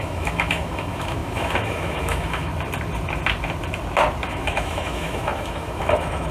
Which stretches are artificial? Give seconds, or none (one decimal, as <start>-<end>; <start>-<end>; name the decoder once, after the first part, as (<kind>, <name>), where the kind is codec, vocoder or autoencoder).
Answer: 0.0-2.5 (autoencoder, DAC-VAE); 4.3-6.3